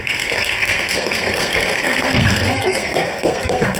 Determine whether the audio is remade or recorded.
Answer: remade